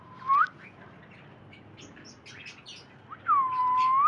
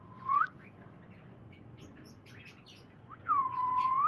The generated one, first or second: second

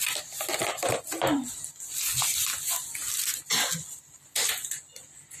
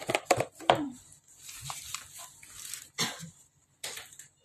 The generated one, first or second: second